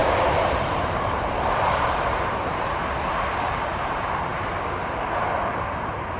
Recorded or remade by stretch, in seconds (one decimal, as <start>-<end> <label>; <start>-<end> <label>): 0.0-6.2 remade